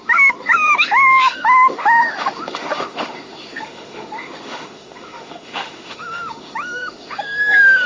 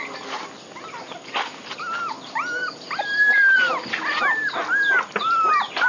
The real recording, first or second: second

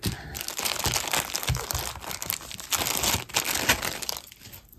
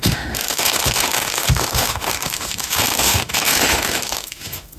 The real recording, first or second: first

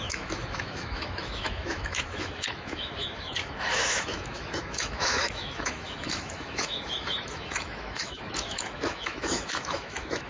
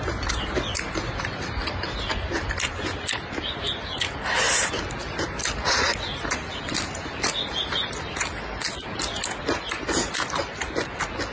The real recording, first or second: second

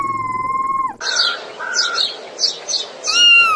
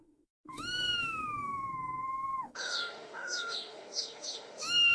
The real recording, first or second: first